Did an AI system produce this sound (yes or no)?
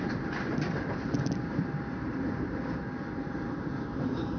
yes